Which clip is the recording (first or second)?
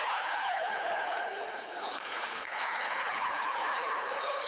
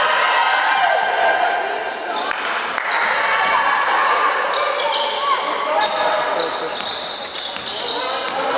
second